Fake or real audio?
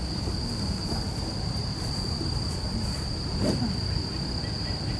real